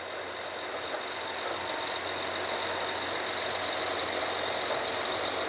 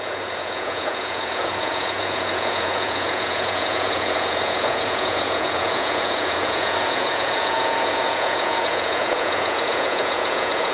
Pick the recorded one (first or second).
first